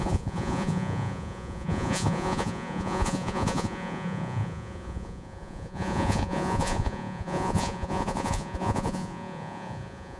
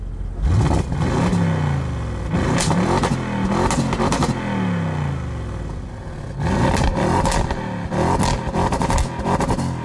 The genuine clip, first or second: second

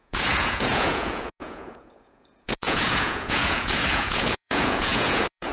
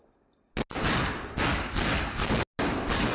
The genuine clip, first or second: second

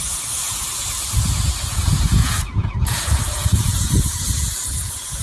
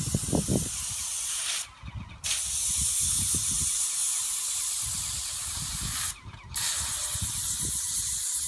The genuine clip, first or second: second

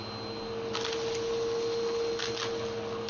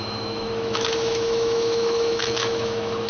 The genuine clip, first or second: first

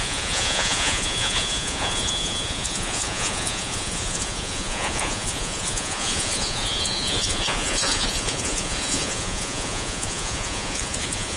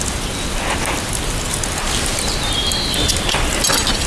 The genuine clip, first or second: second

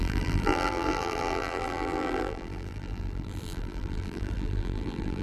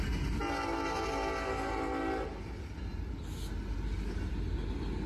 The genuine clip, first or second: second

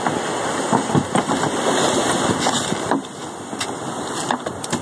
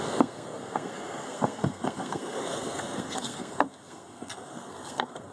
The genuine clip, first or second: first